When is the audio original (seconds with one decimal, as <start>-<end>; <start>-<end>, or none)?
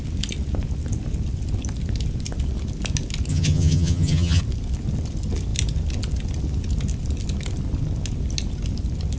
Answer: 0.0-3.3; 4.4-9.2